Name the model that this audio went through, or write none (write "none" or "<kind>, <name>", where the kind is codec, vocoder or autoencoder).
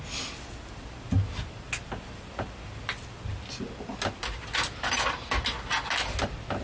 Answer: none